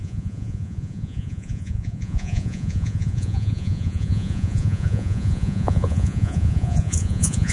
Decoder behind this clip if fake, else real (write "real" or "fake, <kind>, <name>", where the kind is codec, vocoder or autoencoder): fake, vocoder, Vocos